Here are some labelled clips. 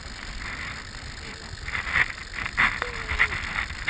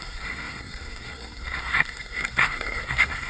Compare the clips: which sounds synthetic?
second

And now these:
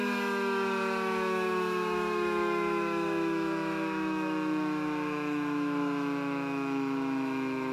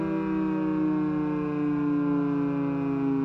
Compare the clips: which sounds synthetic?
first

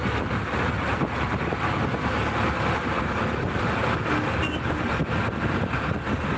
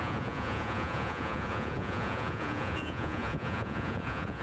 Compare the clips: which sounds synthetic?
second